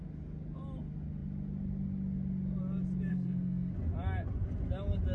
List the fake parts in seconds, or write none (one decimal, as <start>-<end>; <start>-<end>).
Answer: 3.1-3.7